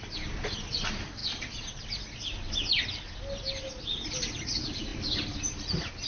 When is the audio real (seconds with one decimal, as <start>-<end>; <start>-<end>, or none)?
0.0-6.1